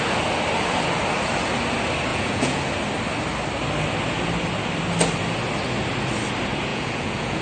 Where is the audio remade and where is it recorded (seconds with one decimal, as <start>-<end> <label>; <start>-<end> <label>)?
0.0-2.1 recorded; 2.1-2.6 remade; 2.6-6.7 recorded; 6.7-7.4 remade